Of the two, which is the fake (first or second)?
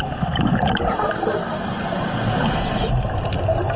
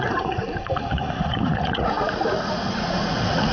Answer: second